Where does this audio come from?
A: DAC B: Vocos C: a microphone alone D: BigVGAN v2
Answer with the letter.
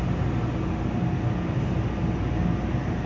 C